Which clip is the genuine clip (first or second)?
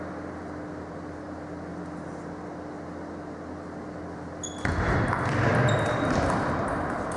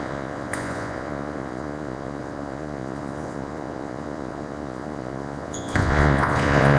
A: first